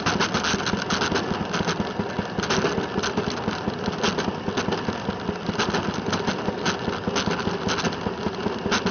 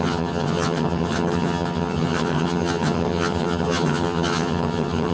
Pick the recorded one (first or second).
first